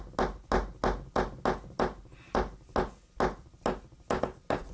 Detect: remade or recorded recorded